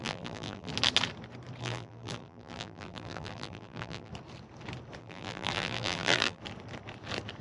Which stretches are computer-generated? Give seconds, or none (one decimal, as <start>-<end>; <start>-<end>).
0.0-0.7; 1.6-4.1; 5.0-6.4